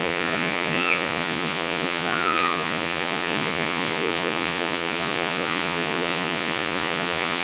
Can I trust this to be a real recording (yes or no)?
no